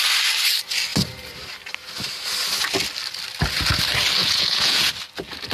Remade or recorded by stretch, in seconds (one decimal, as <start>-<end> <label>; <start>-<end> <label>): 0.0-4.2 recorded; 4.2-4.9 remade; 4.9-5.5 recorded

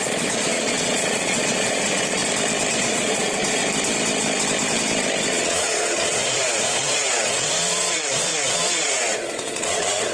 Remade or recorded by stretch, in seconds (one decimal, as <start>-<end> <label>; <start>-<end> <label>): 0.0-2.2 remade; 2.2-2.8 recorded; 2.8-3.6 remade; 3.6-5.3 recorded; 5.3-10.1 remade